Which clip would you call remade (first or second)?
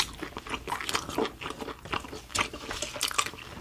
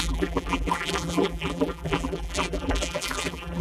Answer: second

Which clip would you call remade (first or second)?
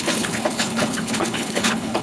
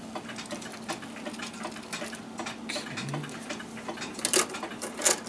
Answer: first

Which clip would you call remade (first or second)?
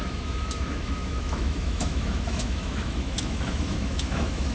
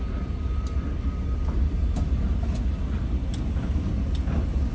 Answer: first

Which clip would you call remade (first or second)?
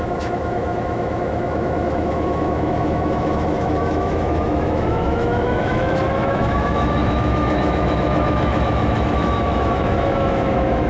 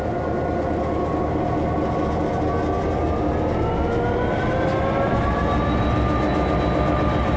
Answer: first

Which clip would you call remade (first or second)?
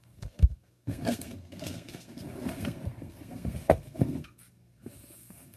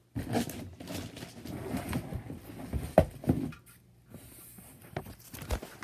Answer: first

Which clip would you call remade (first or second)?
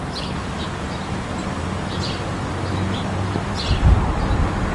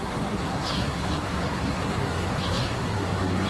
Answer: second